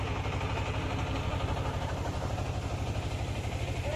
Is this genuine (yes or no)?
yes